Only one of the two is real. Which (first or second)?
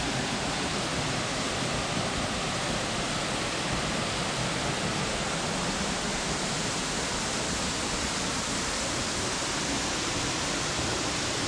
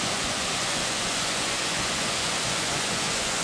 first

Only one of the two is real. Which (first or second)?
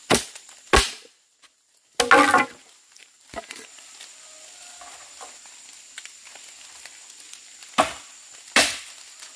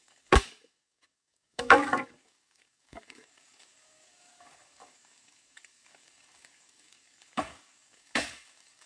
first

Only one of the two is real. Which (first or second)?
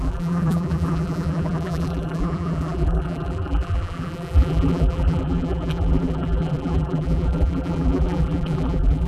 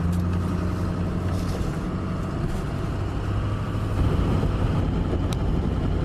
second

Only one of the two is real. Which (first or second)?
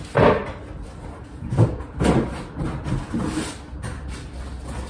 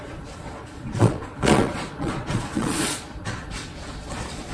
first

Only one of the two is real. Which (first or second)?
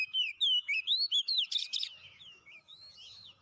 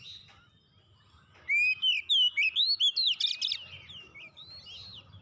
second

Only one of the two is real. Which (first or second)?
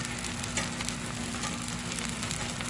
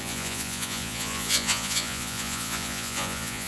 first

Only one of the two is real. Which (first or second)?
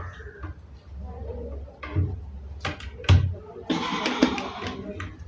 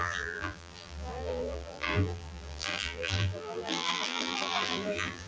first